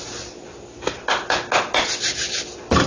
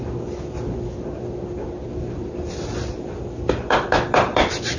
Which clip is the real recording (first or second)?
first